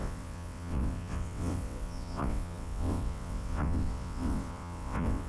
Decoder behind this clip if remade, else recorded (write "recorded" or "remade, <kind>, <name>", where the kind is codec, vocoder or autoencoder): remade, vocoder, WaveNeXt